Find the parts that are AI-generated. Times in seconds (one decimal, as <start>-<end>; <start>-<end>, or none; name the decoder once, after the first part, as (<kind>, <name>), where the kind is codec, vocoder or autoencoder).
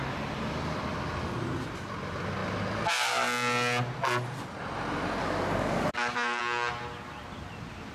5.2-6.4 (codec, DAC)